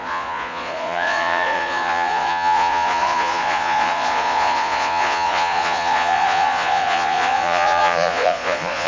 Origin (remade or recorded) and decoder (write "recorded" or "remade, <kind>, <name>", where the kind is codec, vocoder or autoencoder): remade, vocoder, Vocos